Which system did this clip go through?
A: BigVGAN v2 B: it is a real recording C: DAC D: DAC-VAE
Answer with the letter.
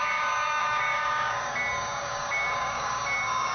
C